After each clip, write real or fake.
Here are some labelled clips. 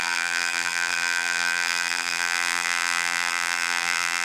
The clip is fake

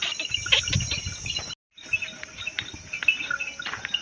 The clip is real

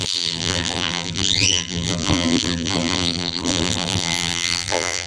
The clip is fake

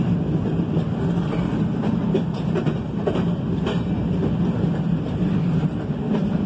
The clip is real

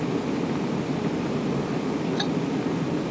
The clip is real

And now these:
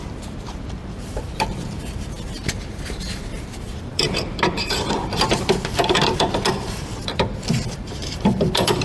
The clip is fake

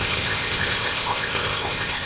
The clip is fake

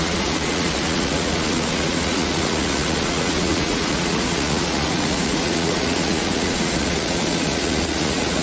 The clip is fake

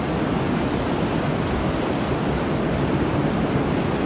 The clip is real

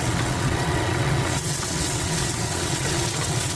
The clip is fake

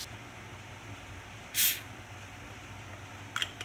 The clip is real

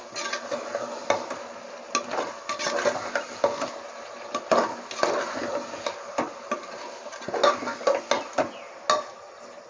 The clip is real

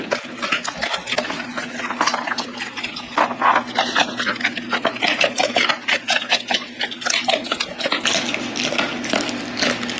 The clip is real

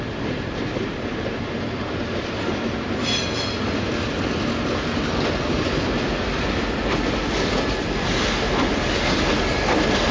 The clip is real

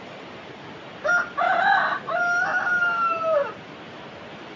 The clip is real